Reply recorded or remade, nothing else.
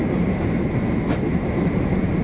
remade